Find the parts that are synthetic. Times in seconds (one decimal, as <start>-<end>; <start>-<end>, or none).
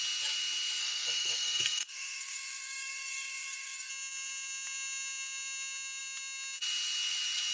0.8-3.9